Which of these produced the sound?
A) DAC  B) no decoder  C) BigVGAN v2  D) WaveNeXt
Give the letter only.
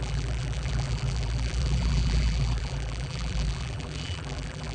C